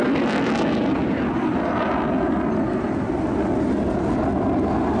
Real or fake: real